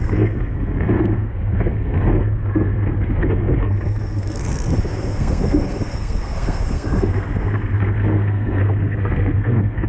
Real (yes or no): no